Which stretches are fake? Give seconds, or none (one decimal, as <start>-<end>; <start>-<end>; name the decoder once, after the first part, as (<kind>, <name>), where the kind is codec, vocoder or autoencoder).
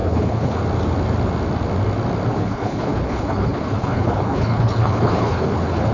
0.0-0.6 (codec, HILCodec); 2.3-5.9